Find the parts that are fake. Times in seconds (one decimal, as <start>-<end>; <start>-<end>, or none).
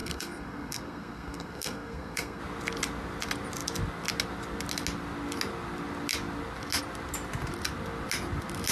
0.0-2.4